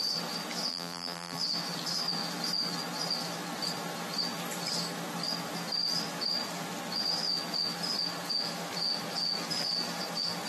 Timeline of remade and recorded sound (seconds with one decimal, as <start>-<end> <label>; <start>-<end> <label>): 0.0-0.7 recorded; 0.7-1.4 remade; 1.4-10.5 recorded